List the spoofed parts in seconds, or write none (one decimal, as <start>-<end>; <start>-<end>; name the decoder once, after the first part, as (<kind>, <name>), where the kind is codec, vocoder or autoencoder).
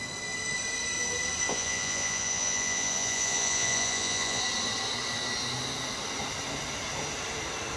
1.5-4.4 (vocoder, Vocos)